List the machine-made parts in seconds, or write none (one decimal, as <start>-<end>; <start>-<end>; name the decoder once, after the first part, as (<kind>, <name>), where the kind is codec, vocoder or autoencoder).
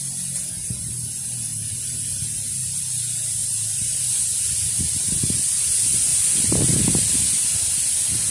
none